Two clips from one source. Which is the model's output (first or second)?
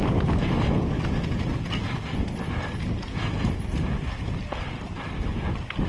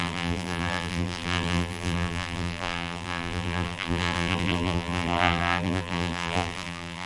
second